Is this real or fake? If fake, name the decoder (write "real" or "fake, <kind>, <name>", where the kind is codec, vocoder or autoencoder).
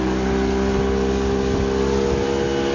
real